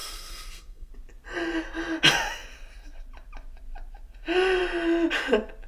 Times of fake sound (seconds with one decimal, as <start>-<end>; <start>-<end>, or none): 0.0-0.9